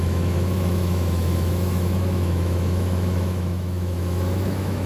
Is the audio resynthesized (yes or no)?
yes